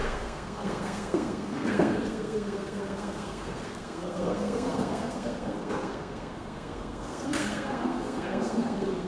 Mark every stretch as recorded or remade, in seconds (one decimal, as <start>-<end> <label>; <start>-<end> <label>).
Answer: 0.0-9.1 remade